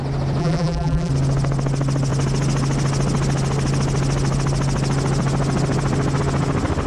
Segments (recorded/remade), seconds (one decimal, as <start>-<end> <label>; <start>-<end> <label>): 0.0-0.4 recorded; 0.4-1.1 remade; 1.1-6.9 recorded